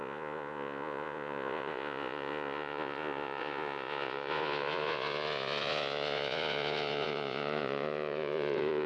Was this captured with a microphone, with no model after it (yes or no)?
no